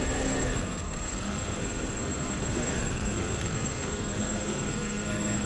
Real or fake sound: fake